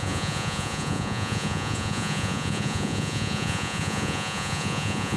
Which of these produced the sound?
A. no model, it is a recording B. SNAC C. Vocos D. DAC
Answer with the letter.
C